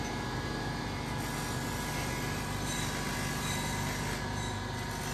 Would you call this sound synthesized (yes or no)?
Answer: no